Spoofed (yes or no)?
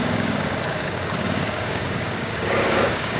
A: yes